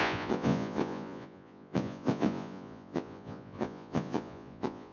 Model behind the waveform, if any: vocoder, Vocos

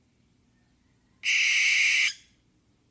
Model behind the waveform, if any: none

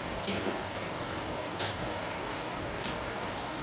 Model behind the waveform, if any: codec, DAC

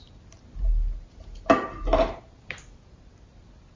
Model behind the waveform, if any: none